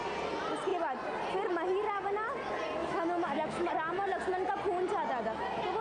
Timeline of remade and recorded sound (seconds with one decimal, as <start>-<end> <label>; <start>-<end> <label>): 0.0-2.8 recorded; 2.8-3.7 remade; 3.7-5.8 recorded